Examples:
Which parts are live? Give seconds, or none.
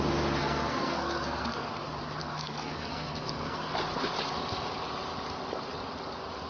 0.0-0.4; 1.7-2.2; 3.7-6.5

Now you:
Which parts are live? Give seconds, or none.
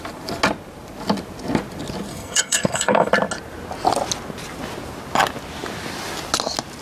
0.0-2.1; 3.1-6.8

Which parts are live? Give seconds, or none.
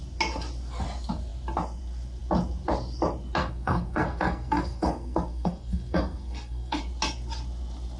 0.0-3.4; 6.8-8.0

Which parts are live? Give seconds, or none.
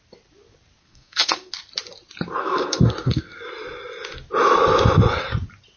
0.0-0.8; 1.5-2.4; 3.4-5.8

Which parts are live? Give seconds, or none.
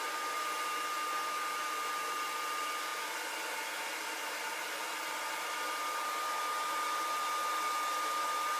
0.0-8.6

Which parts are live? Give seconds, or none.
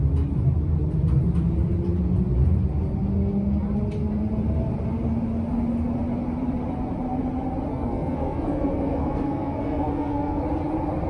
0.0-7.7; 10.4-11.1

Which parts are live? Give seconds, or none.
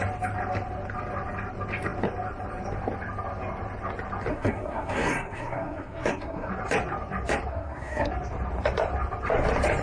0.0-4.3; 6.5-7.5; 8.1-9.8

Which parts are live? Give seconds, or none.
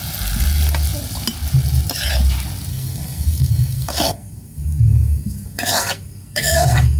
0.0-2.7